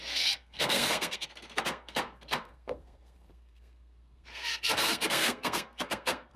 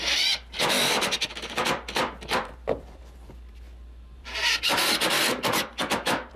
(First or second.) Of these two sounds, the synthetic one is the first